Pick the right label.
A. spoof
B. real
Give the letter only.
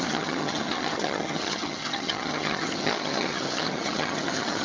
A